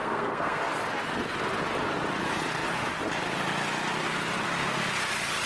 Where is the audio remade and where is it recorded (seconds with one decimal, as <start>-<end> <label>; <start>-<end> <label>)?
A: 0.0-0.6 remade; 0.6-5.5 recorded